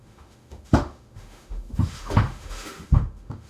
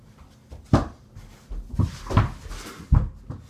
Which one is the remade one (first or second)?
first